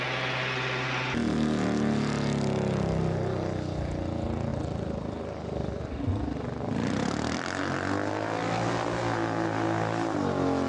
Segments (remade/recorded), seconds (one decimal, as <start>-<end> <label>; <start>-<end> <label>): 0.0-10.7 recorded

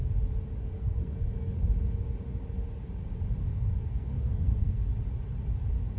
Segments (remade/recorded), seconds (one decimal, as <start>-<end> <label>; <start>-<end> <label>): 0.0-0.6 recorded; 0.6-1.7 remade; 1.7-3.5 recorded; 3.5-4.9 remade; 4.9-6.0 recorded

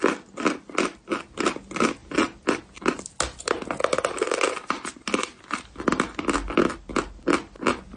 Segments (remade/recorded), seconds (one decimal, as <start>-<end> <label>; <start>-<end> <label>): 0.0-8.0 recorded